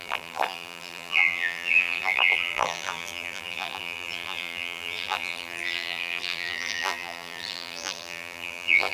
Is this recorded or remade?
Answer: remade